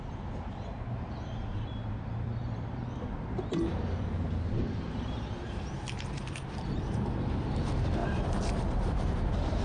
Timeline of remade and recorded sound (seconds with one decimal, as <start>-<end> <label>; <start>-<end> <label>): 0.0-9.6 remade